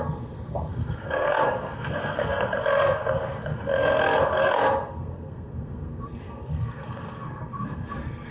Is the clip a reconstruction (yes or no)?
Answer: yes